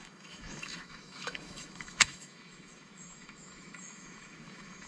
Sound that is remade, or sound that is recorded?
remade